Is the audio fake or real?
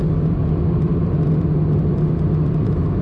real